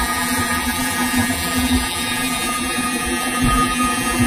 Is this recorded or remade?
remade